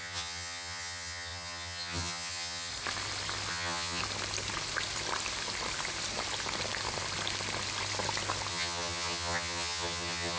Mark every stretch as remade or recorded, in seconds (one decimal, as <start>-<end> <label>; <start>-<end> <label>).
0.0-2.7 remade; 2.7-3.5 recorded; 3.5-4.0 remade; 4.0-8.5 recorded; 8.5-10.4 remade